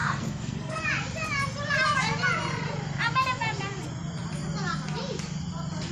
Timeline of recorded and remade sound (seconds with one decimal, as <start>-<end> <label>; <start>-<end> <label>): 0.0-0.8 remade; 0.8-5.9 recorded